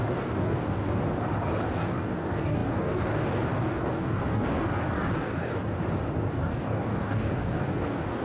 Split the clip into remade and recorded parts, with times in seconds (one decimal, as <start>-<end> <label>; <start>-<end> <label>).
0.0-1.0 remade; 1.0-1.6 recorded; 1.6-5.6 remade; 5.6-6.3 recorded; 6.3-8.2 remade